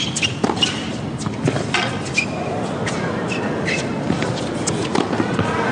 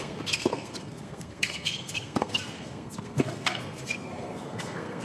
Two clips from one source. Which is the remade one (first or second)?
second